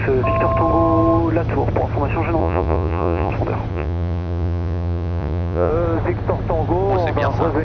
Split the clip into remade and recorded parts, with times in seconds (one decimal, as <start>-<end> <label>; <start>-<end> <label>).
0.0-2.4 recorded; 2.4-3.3 remade; 3.3-3.7 recorded; 3.7-5.7 remade; 5.7-7.6 recorded